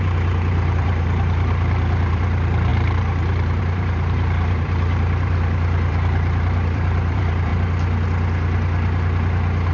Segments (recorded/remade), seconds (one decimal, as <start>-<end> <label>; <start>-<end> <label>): 0.0-7.5 remade; 7.5-9.7 recorded